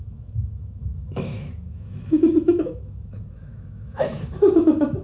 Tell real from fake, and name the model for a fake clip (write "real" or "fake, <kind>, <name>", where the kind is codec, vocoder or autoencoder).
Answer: fake, autoencoder, DAC-VAE